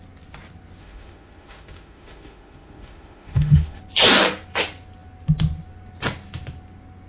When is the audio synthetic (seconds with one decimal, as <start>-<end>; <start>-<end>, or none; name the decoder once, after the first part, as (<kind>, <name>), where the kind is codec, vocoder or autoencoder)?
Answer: 0.8-3.8 (autoencoder, DAC-VAE)